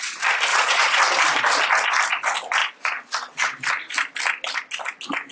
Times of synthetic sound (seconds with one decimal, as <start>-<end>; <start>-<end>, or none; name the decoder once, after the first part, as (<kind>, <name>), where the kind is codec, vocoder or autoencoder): 0.5-1.0 (vocoder, Vocos)